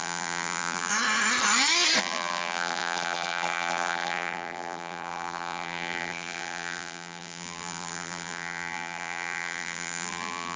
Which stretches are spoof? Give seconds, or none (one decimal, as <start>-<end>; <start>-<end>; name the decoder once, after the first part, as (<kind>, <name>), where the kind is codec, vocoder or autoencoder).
0.0-0.9 (vocoder, BigVGAN v2); 2.0-10.6